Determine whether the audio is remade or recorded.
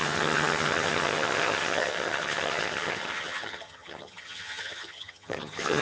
remade